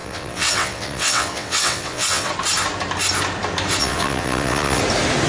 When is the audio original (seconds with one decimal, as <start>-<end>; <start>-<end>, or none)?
2.3-3.8; 4.8-5.3